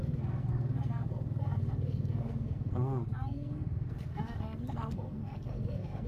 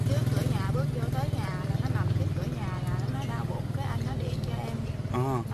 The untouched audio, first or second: second